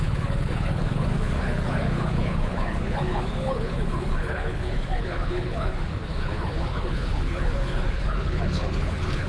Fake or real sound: fake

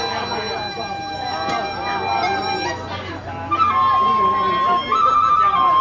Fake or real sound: real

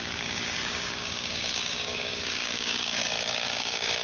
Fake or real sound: fake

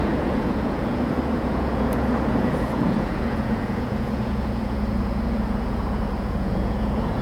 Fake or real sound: fake